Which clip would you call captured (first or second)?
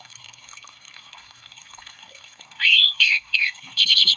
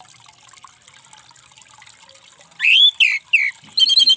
second